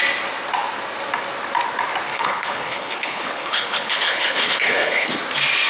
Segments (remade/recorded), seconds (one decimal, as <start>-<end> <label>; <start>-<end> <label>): 0.0-2.1 recorded; 2.1-5.1 remade; 5.1-5.7 recorded

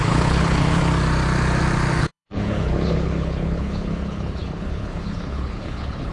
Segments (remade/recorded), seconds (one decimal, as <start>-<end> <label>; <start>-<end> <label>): 0.0-0.8 remade; 0.8-2.0 recorded; 2.0-6.1 remade

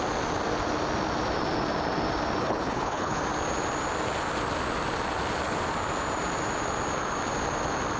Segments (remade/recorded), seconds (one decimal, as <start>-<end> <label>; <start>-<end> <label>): 0.0-2.4 recorded; 2.4-3.2 remade; 3.2-8.0 recorded